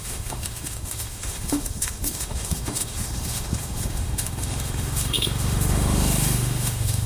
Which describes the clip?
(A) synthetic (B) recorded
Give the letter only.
A